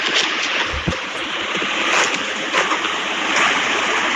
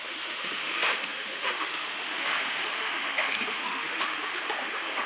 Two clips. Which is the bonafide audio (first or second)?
first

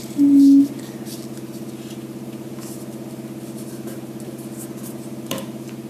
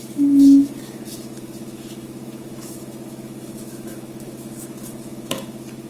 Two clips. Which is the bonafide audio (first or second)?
first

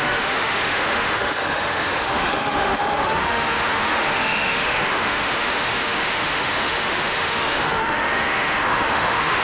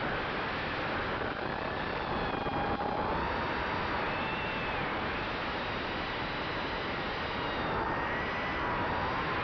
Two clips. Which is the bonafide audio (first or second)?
second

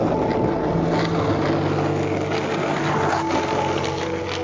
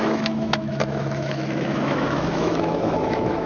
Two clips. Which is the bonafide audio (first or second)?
first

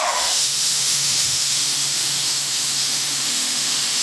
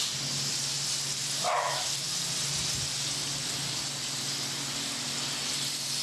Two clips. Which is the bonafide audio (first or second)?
second